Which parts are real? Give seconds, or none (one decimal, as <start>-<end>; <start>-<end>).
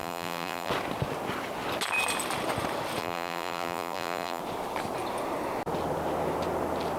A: 0.7-3.0; 4.4-7.0